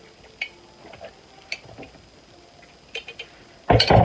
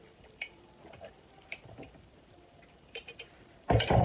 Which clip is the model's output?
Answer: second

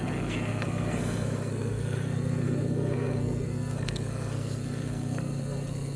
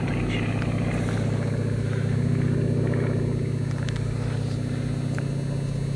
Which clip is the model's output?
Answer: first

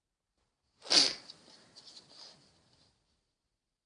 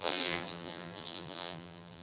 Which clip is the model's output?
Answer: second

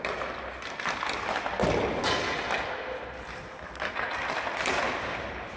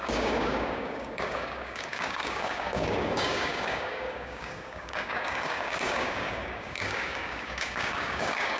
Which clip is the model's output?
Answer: second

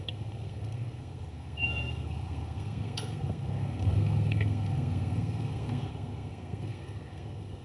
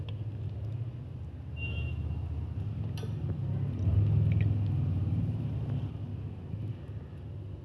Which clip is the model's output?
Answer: first